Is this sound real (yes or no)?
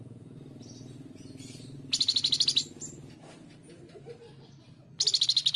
yes